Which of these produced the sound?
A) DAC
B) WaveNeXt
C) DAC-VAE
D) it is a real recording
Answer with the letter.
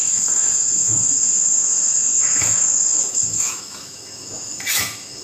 C